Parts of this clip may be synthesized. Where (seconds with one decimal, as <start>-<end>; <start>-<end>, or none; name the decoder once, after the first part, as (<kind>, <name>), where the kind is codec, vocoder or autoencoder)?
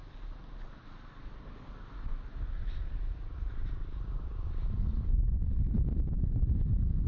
2.3-6.6 (vocoder, BigVGAN v2)